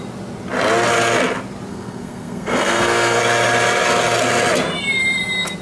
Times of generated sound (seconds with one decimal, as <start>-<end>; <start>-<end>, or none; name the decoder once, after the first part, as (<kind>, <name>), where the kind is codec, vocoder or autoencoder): 1.7-3.2 (codec, SNAC)